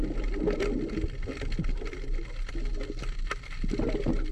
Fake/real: real